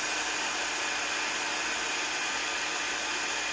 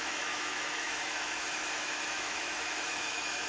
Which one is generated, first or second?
second